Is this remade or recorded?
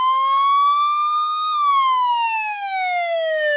remade